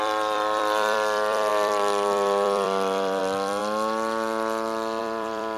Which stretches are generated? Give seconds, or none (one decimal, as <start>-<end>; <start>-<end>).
0.0-3.6; 5.0-5.6